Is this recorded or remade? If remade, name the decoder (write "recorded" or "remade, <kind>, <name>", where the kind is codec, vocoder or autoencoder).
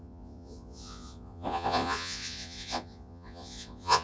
remade, vocoder, Vocos